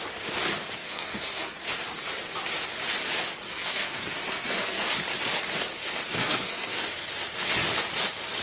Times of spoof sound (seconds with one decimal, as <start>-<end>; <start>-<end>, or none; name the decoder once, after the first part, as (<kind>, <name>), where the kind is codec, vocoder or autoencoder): 0.8-1.6 (codec, SNAC); 3.5-4.9; 6.2-6.8